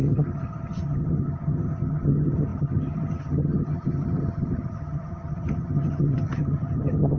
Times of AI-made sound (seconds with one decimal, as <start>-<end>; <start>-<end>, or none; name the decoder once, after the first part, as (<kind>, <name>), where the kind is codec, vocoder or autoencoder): 0.0-7.2 (vocoder, HiFi-GAN)